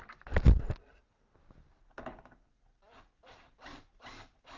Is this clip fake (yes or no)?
no